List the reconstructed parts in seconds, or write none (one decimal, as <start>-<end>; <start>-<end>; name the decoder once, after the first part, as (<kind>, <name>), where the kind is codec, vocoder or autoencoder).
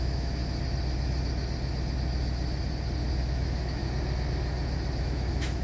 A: 0.0-0.4 (autoencoder, DAC-VAE); 3.2-3.8; 5.0-5.6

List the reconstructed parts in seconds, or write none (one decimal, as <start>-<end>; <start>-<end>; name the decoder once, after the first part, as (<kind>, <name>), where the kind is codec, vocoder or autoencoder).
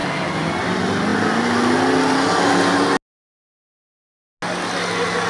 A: none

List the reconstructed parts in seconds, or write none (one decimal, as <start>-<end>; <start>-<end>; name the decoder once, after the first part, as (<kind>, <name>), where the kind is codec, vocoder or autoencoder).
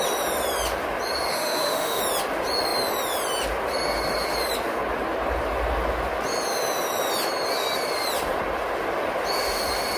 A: 1.3-2.0 (autoencoder, DAC-VAE)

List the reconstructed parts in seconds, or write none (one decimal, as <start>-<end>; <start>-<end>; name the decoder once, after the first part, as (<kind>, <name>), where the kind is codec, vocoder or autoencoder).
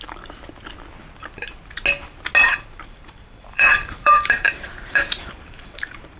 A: 2.4-6.2 (vocoder, BigVGAN v2)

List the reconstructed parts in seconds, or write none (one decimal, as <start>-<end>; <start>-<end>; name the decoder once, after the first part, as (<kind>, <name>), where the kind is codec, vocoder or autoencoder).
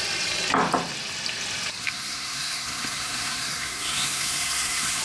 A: 1.8-5.0 (codec, SNAC)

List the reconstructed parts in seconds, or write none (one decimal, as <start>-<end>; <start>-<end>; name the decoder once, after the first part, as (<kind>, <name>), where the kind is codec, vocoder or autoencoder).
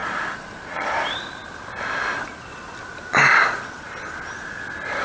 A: 0.0-0.9 (vocoder, Vocos)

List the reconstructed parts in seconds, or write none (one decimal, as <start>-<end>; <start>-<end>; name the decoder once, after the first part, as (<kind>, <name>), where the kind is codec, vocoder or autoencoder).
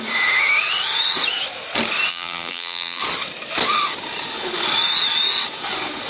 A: 2.1-3.0 (vocoder, BigVGAN v2)